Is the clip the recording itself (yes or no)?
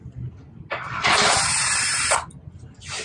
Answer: yes